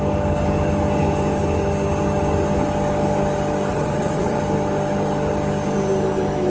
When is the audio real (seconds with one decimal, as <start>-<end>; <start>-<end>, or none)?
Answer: 0.0-3.7; 4.4-6.5